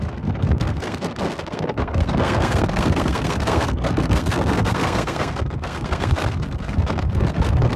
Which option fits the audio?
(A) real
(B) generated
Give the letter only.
B